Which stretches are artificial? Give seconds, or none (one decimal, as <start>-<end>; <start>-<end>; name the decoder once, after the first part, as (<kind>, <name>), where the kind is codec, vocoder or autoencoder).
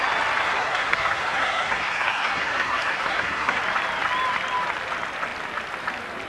0.4-3.6 (codec, SNAC)